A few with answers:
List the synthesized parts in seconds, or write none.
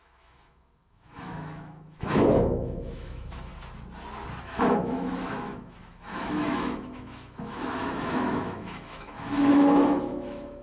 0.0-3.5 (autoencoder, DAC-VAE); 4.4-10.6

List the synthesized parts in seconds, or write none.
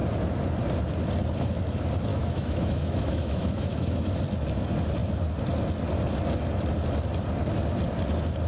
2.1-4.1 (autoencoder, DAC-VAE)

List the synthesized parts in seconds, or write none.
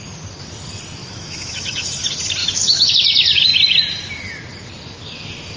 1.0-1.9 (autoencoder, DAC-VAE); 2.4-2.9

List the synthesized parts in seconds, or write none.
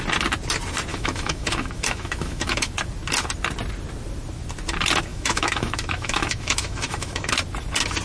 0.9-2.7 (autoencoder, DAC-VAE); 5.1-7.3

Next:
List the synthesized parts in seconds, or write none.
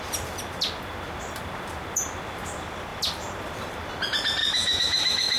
4.4-5.4 (autoencoder, DAC-VAE)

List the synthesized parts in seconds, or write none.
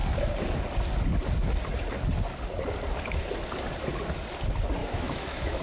4.8-5.6 (autoencoder, DAC-VAE)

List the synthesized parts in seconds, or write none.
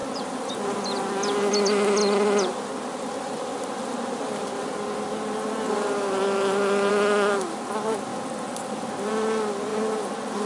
none